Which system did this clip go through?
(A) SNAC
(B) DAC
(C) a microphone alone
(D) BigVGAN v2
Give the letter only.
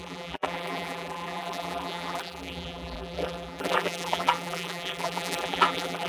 D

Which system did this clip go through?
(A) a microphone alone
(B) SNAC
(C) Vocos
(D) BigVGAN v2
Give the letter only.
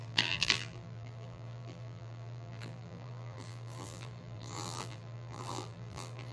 D